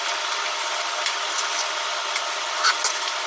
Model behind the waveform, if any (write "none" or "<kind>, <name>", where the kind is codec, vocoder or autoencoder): none